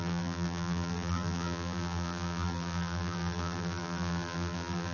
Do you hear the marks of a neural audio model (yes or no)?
yes